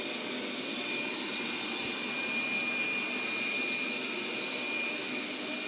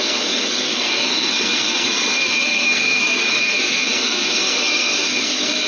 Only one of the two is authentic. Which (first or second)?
first